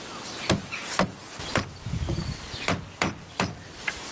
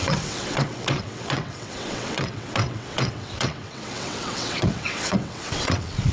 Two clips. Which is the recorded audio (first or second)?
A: first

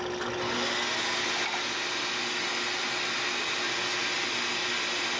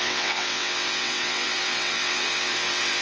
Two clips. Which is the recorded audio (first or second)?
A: first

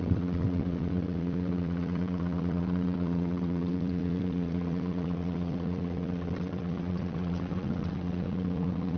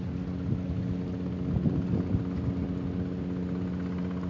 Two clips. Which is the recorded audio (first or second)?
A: second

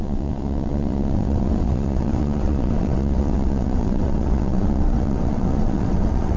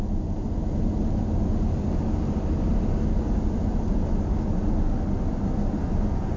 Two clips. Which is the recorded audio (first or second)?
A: second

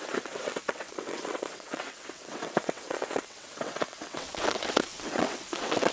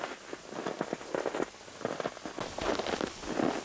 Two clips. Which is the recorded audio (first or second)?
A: second